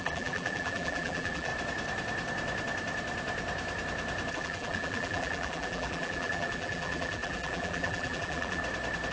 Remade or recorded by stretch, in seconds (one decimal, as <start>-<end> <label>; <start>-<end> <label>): 0.0-1.5 remade; 1.5-4.3 recorded; 4.3-8.6 remade; 8.6-9.1 recorded